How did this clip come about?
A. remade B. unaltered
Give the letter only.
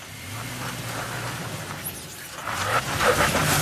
B